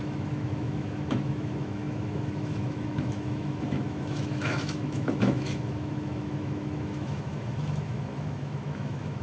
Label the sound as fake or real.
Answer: fake